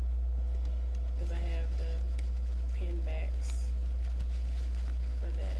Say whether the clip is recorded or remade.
recorded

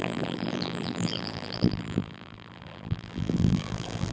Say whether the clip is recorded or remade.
remade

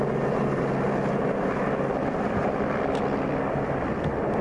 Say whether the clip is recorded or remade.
recorded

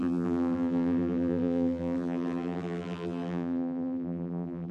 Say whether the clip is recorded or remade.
remade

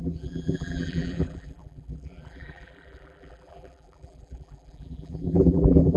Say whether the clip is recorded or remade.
remade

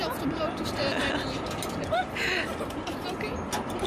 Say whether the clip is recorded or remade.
recorded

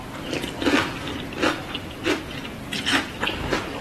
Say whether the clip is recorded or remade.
recorded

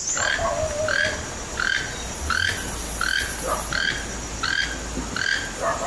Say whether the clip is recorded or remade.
recorded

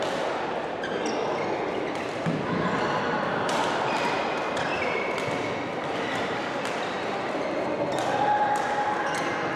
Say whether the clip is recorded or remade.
recorded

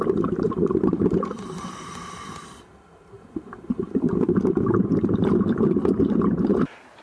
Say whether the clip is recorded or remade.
remade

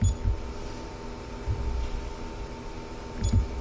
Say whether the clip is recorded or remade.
recorded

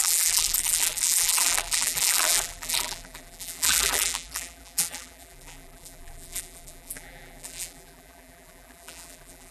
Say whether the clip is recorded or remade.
remade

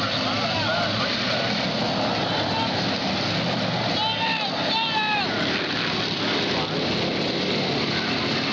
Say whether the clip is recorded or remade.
recorded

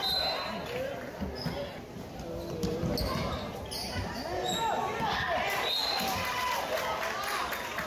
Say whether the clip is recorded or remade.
recorded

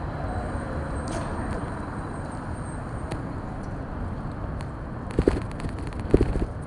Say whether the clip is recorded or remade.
remade